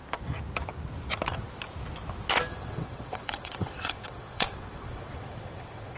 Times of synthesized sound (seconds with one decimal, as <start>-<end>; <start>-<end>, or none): 2.5-6.0